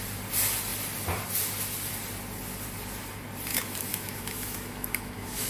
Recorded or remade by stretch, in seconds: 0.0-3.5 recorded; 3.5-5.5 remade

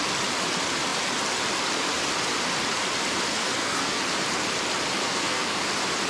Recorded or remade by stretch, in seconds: 0.0-3.3 recorded; 3.3-4.0 remade; 4.0-5.0 recorded; 5.0-5.6 remade; 5.6-6.1 recorded

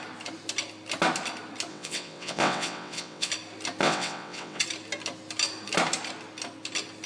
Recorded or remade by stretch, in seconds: 0.0-1.7 recorded; 1.7-3.3 remade; 3.3-3.8 recorded; 3.8-4.6 remade; 4.6-7.1 recorded

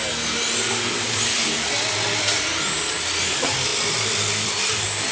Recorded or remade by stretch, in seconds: 0.0-3.7 recorded; 3.7-5.1 remade

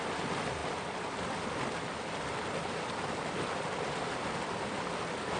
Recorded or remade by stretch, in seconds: 0.0-5.4 recorded

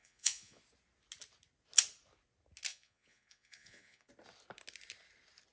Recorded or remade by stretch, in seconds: 0.0-0.6 remade; 0.6-2.7 recorded; 2.7-4.1 remade; 4.1-5.5 recorded